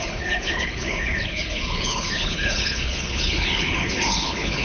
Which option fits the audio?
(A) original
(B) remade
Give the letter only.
B